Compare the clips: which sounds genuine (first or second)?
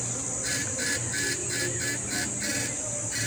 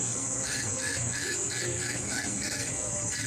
first